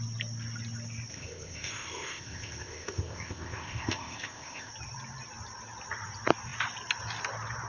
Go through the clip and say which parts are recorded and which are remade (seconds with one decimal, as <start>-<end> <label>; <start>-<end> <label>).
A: 0.0-1.1 recorded; 1.1-4.7 remade; 4.7-7.7 recorded